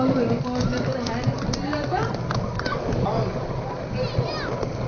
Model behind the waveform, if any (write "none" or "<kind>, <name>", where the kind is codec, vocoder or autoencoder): none